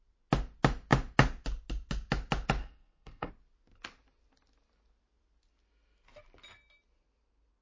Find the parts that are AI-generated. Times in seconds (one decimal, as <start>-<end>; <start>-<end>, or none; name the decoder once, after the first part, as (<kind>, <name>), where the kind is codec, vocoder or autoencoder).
2.6-3.3 (codec, SNAC)